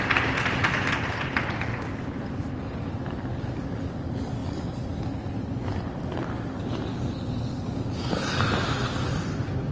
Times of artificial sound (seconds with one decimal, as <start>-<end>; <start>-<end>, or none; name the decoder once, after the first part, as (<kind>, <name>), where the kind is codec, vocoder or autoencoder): none